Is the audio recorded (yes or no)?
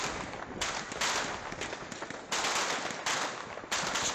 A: yes